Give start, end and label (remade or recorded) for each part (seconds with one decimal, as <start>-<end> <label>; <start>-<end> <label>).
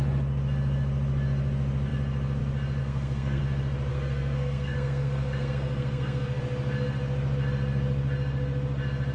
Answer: 0.0-2.8 recorded; 2.8-3.4 remade; 3.4-3.9 recorded; 3.9-6.4 remade; 6.4-9.1 recorded